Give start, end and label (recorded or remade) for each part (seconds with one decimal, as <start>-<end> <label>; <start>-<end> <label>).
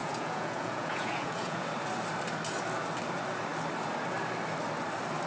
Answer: 0.0-1.6 remade; 1.6-5.3 recorded